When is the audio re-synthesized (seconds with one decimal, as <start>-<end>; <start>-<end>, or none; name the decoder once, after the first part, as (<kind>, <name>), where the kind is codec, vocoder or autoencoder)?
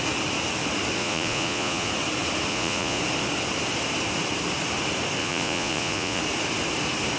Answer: 1.0-1.9 (vocoder, Vocos); 2.5-3.0; 5.2-6.2